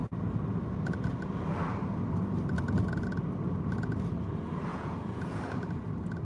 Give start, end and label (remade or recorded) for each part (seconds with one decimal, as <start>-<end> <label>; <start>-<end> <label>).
0.0-4.7 recorded; 4.7-5.4 remade; 5.4-6.2 recorded